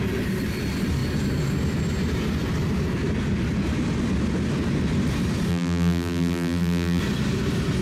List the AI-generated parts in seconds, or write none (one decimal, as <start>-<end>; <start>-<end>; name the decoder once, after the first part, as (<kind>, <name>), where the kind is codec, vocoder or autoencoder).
5.5-7.0 (vocoder, BigVGAN v2)